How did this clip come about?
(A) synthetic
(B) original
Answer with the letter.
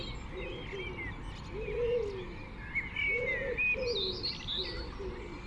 B